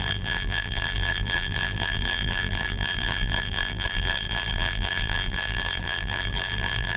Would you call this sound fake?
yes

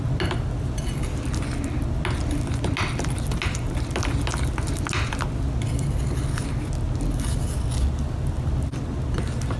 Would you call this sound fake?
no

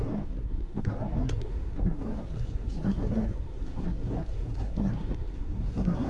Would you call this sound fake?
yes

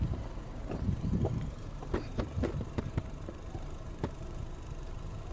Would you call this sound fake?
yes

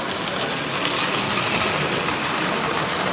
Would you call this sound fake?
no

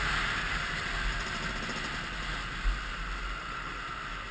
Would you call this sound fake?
no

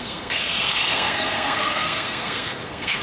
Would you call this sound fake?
yes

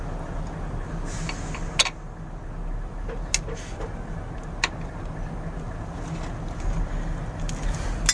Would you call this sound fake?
no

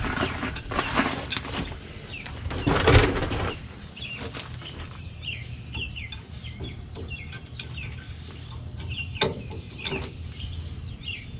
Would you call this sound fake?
no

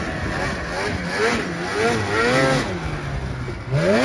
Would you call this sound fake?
no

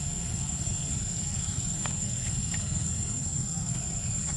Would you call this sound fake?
yes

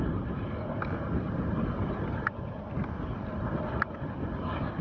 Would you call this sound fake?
no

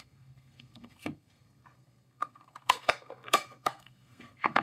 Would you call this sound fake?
yes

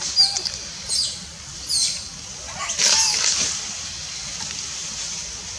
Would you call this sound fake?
no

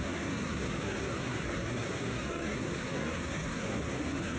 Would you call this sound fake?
yes